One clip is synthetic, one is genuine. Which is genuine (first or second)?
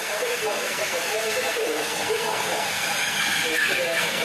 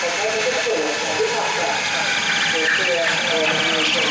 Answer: second